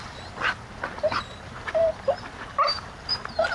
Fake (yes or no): no